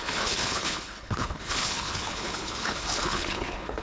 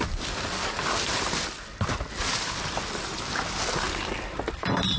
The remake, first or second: first